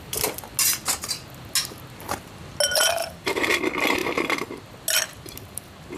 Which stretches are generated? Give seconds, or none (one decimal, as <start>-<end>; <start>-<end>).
3.0-3.6